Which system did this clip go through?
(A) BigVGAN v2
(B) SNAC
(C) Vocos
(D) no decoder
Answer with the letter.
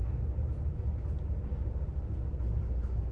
D